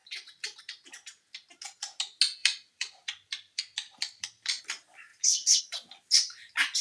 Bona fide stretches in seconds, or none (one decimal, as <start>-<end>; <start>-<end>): 0.6-2.4; 4.6-5.1; 5.6-6.8